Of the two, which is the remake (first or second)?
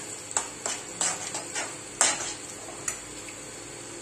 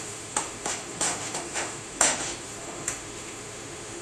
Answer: second